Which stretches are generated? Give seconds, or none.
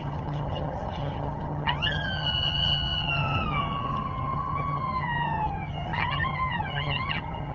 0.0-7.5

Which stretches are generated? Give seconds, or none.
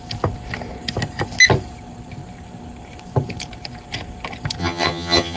4.6-5.4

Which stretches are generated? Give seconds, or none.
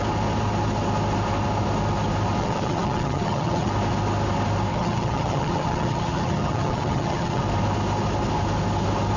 2.4-3.7; 4.7-7.4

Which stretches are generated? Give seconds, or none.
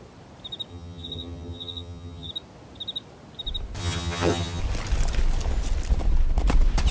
0.7-2.3; 3.8-4.6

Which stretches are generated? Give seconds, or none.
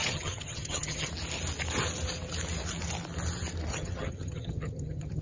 0.0-1.1; 3.7-5.2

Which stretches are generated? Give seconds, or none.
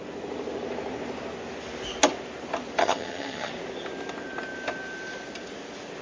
2.8-3.5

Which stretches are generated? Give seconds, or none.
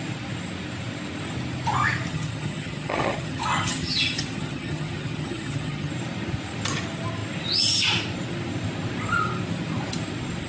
2.1-5.9